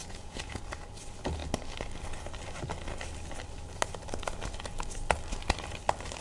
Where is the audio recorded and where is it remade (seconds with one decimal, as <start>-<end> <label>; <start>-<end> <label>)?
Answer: 0.0-0.6 remade; 0.6-6.2 recorded